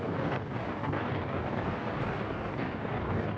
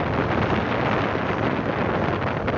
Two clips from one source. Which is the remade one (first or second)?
first